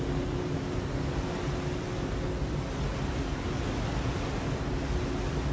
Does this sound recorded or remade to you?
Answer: recorded